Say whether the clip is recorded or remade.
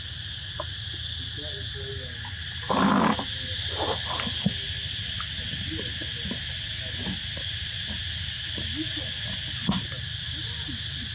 recorded